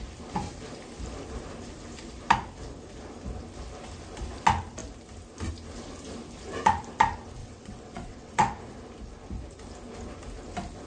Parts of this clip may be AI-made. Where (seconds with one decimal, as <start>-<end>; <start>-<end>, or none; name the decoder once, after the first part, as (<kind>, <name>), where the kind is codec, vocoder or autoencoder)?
7.4-8.6 (vocoder, WaveNeXt)